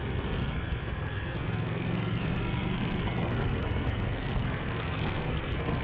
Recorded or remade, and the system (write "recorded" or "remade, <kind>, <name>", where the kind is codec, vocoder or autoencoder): remade, codec, SNAC